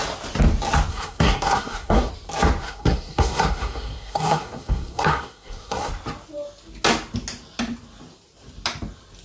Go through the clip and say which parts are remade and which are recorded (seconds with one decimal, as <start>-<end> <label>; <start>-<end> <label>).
0.0-0.9 recorded; 0.9-2.1 remade; 2.1-2.6 recorded; 2.6-5.9 remade; 5.9-9.2 recorded